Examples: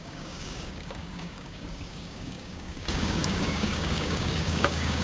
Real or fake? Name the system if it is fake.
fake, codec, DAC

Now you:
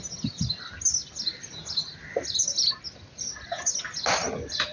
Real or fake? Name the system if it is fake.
real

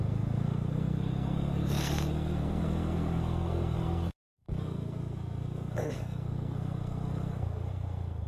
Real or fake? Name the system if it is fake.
fake, codec, SNAC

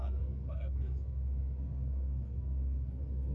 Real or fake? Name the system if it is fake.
fake, codec, SNAC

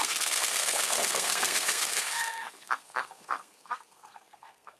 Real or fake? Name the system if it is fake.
fake, codec, SNAC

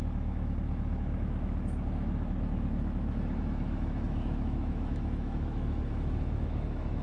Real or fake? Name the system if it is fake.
fake, autoencoder, DAC-VAE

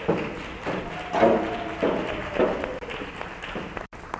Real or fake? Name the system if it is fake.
real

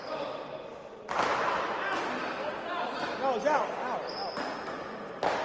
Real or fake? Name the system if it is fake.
real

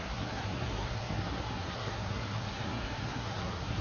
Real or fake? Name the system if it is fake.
fake, codec, SNAC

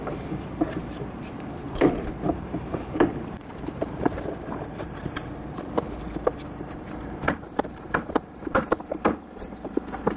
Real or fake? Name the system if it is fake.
fake, vocoder, BigVGAN v2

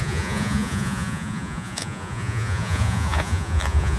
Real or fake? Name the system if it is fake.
fake, vocoder, Vocos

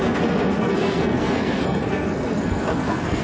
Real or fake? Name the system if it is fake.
fake, codec, SNAC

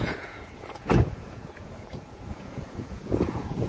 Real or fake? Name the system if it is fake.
fake, vocoder, Vocos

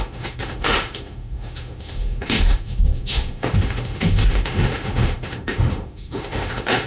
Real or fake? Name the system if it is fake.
fake, autoencoder, DAC-VAE